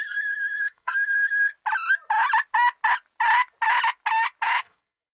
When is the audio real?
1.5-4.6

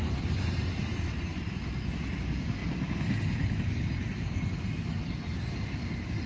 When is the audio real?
0.0-6.3

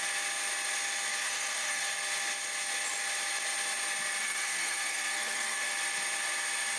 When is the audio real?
0.0-1.2; 1.8-4.2; 5.7-6.8

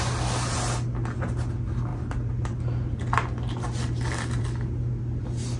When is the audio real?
0.0-5.6

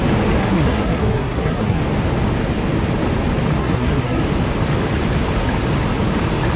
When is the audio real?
0.0-0.4; 1.8-3.6; 4.2-6.6

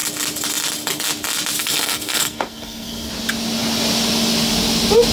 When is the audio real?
0.0-1.6; 3.1-5.1

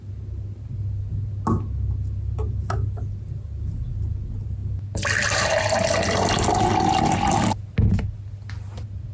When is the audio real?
0.0-9.1